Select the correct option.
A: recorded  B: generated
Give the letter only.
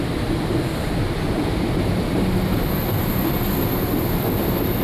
A